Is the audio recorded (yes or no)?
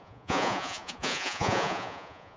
no